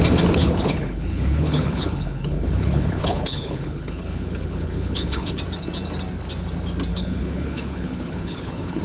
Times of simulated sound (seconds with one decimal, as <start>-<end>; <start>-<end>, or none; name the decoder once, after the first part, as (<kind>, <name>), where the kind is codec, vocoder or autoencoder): 0.4-5.4 (codec, HILCodec); 6.9-8.8